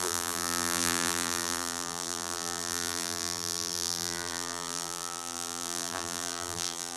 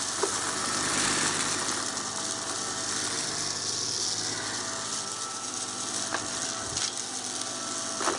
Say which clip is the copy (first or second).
first